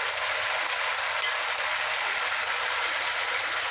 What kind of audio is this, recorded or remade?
recorded